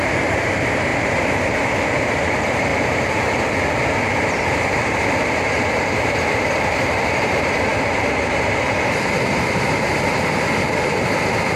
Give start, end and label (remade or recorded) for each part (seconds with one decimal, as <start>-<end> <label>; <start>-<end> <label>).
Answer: 0.0-2.7 remade; 2.7-4.4 recorded; 4.4-11.6 remade